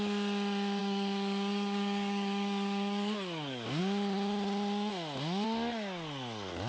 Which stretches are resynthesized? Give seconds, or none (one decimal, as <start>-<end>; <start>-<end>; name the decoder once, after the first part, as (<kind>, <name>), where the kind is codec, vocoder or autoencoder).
0.8-3.8 (codec, DAC)